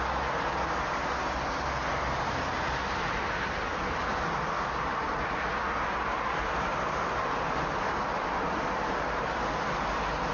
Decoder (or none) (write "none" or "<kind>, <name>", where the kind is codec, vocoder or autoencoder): none